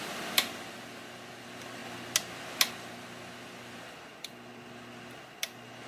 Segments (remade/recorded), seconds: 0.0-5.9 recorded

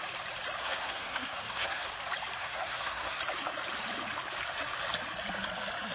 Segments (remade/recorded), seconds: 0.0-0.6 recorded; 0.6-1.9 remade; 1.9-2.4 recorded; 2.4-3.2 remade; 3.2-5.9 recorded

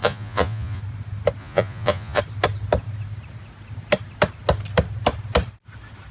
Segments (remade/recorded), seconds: 0.0-0.8 remade; 0.8-1.4 recorded; 1.4-2.2 remade; 2.2-6.1 recorded

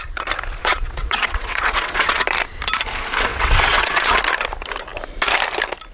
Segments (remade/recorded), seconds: 0.0-0.6 recorded; 0.6-2.2 remade; 2.2-3.3 recorded; 3.3-4.1 remade; 4.1-5.9 recorded

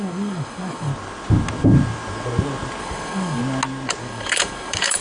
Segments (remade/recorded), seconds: 0.0-0.9 remade; 0.9-2.8 recorded; 2.8-3.4 remade; 3.4-4.0 recorded; 4.0-5.0 remade